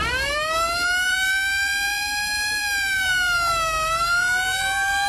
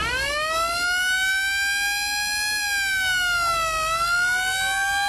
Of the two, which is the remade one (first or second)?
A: first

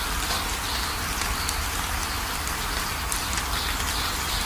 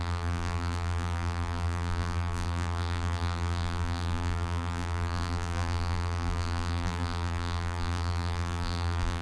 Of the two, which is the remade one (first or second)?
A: second